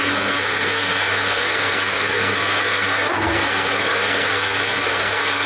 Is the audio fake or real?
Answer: fake